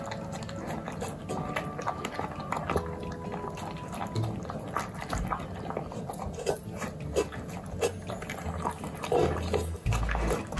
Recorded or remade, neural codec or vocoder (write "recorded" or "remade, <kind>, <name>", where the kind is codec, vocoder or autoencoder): recorded